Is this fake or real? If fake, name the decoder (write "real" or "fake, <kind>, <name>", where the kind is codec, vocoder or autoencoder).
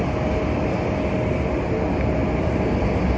real